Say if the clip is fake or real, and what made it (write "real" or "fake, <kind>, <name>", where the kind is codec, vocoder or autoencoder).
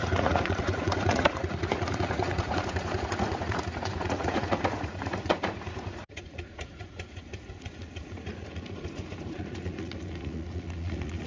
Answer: fake, vocoder, Vocos